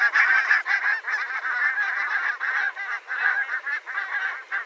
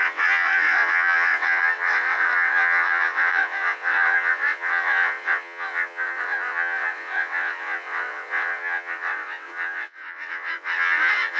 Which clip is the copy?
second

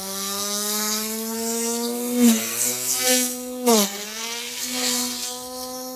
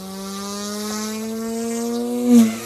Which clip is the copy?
first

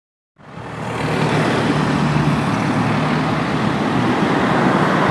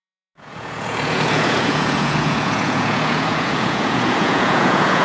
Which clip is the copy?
second